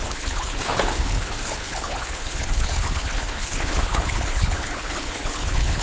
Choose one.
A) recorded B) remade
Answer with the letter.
B